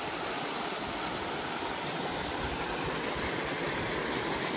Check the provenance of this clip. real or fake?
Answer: real